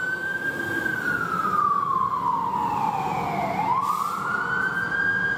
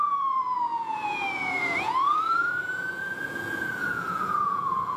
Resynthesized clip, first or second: second